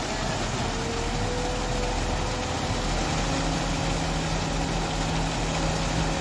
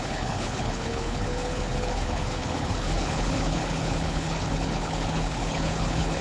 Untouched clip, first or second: first